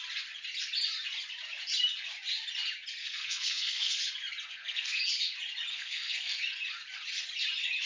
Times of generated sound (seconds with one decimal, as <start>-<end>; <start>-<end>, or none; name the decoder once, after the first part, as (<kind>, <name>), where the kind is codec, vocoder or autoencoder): 3.0-4.0 (codec, SNAC); 4.5-5.0; 5.7-6.4